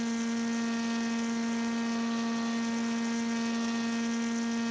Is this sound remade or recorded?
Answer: recorded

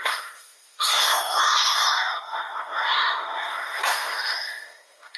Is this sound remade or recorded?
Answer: remade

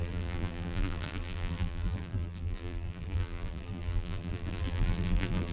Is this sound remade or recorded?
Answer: remade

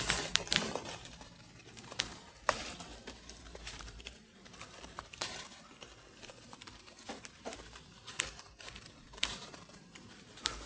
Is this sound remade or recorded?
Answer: remade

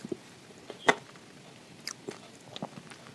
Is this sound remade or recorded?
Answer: recorded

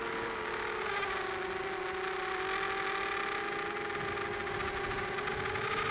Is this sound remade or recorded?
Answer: recorded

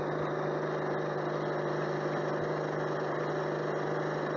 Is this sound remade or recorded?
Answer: recorded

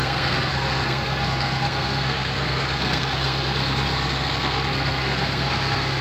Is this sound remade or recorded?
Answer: remade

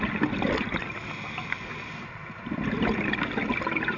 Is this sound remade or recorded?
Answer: recorded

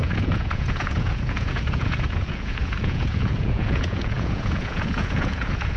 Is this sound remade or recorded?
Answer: remade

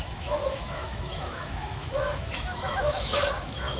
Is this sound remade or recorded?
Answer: remade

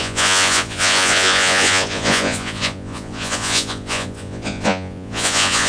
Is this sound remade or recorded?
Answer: remade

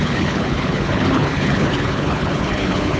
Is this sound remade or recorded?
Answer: remade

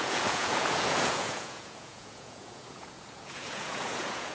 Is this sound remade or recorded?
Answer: remade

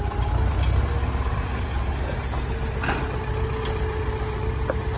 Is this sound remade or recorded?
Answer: recorded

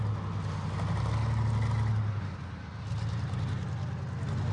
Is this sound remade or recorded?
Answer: recorded